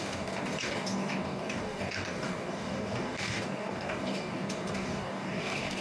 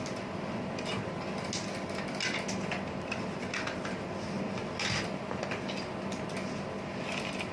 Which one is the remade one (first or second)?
first